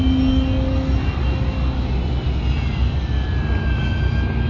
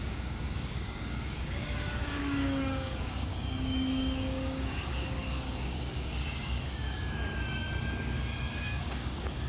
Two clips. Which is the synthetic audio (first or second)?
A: second